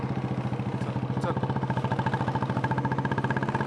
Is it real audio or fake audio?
real